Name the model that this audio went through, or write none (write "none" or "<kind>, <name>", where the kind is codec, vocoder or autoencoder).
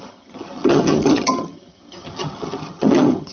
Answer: vocoder, HiFi-GAN